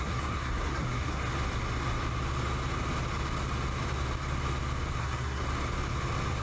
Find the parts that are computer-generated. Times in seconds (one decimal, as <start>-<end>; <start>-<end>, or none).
0.0-1.2; 5.0-5.4